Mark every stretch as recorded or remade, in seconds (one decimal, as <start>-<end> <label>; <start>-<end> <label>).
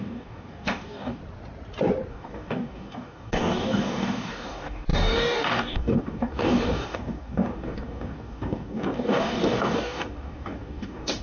0.0-1.2 remade; 1.2-2.1 recorded; 2.1-11.2 remade